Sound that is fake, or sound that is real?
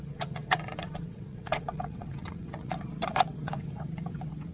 fake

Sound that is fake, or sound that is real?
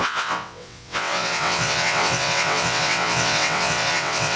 fake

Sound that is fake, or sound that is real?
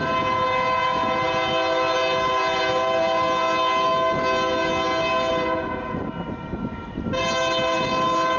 real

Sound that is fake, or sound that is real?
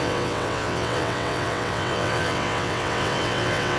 fake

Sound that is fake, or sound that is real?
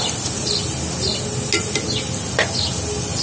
real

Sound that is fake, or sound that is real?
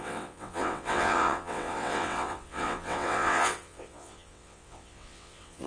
fake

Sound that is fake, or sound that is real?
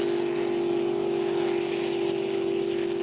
real